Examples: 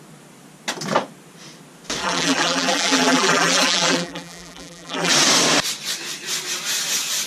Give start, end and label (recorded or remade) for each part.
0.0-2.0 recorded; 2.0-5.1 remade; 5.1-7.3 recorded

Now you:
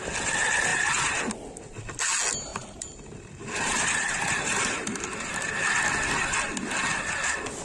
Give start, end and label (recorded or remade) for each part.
0.0-0.7 recorded; 0.7-1.2 remade; 1.2-2.5 recorded; 2.5-5.5 remade; 5.5-7.6 recorded

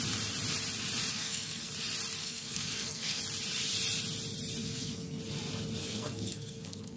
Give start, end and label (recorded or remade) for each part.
0.0-1.1 recorded; 1.1-1.7 remade; 1.7-2.2 recorded; 2.2-3.2 remade; 3.2-4.6 recorded; 4.6-5.2 remade; 5.2-5.8 recorded; 5.8-7.0 remade

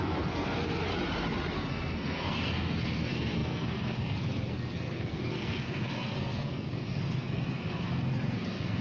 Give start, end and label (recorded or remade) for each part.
0.0-0.9 remade; 0.9-1.5 recorded; 1.5-8.8 remade